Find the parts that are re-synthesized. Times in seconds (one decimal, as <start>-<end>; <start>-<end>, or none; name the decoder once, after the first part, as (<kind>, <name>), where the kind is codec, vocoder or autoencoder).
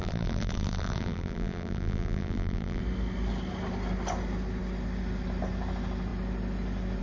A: 0.0-2.8 (vocoder, BigVGAN v2)